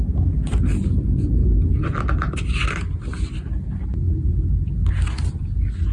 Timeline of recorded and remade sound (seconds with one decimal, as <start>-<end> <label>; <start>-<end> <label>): 0.0-5.9 recorded